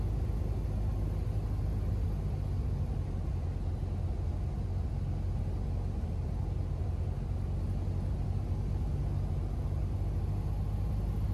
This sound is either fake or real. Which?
real